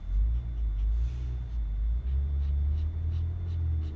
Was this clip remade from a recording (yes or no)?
no